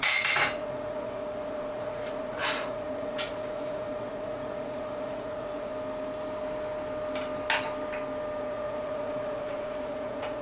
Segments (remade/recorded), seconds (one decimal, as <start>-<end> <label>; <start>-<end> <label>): 0.0-5.7 remade; 5.7-8.4 recorded; 8.4-10.4 remade